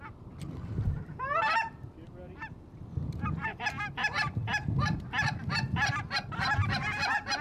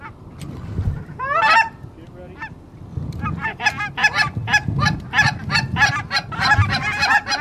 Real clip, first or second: second